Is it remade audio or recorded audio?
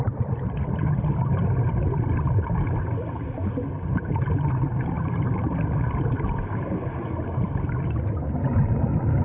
recorded